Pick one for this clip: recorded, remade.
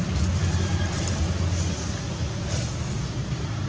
recorded